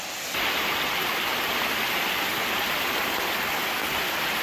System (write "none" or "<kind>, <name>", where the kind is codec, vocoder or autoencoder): none